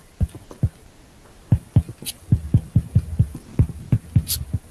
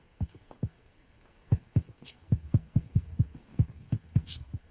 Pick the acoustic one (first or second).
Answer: first